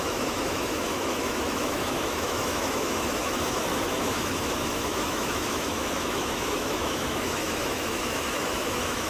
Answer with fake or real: fake